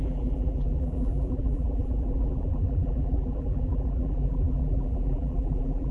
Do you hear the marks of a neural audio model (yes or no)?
yes